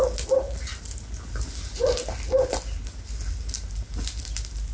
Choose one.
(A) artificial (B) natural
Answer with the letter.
B